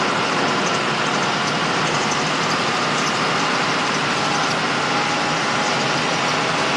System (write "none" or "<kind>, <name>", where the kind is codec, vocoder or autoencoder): none